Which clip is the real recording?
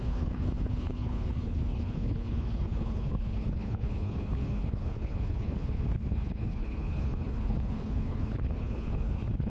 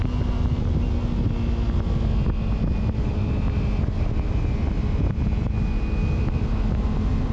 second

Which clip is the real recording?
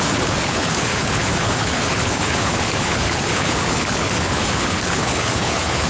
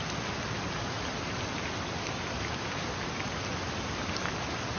second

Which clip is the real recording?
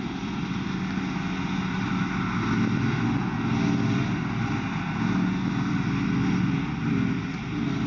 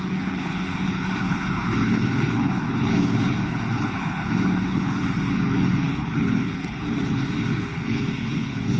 first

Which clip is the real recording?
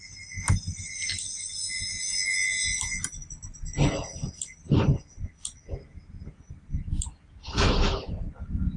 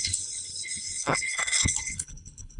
first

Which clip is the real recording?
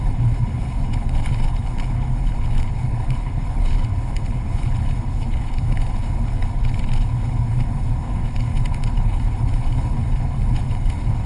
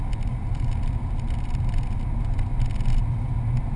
second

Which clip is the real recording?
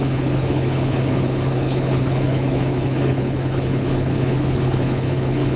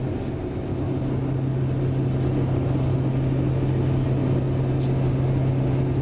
second